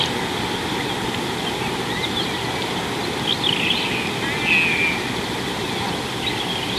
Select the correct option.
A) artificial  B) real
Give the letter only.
B